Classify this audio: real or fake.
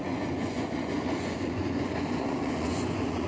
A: fake